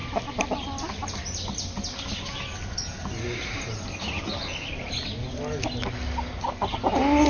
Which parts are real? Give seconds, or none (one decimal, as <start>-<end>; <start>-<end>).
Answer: 0.0-7.3